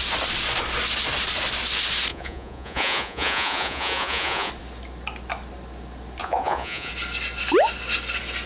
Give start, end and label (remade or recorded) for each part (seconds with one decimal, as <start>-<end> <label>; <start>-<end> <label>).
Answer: 0.0-2.1 recorded; 2.1-4.5 remade; 4.5-6.2 recorded; 6.2-6.9 remade; 6.9-8.5 recorded